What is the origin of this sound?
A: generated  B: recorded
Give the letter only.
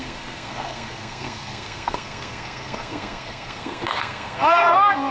A